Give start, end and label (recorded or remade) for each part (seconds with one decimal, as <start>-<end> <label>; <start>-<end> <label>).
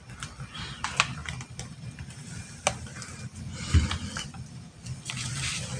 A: 0.0-1.2 recorded; 1.2-1.7 remade; 1.7-5.8 recorded